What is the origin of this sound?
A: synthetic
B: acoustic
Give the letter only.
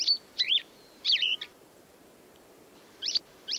A